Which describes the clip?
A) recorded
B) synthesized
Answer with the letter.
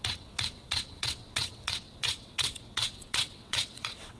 B